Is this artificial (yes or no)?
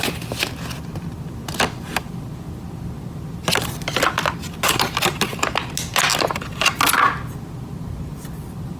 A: no